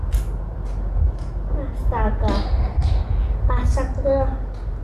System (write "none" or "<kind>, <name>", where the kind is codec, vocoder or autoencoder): none